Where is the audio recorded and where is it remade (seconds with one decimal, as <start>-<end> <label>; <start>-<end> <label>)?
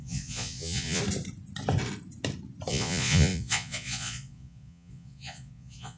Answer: 0.0-1.0 remade; 1.0-2.7 recorded; 2.7-6.0 remade